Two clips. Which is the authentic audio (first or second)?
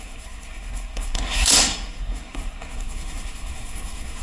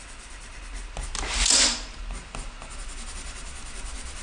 second